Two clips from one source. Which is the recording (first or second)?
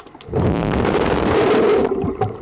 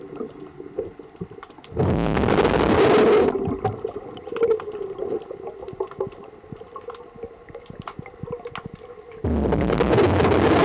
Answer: second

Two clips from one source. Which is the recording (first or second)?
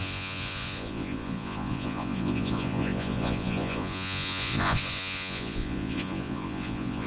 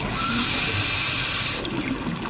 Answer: second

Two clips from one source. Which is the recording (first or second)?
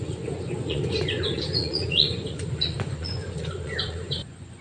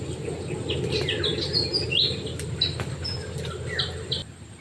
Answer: second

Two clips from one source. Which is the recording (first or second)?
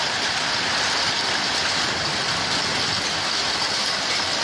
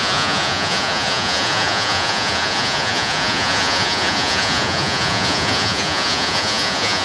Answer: first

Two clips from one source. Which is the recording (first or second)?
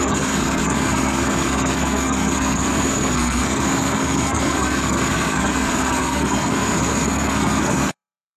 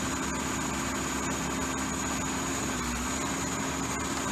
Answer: second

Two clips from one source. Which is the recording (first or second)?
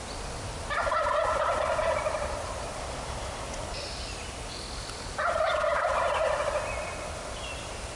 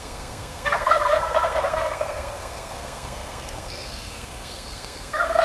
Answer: first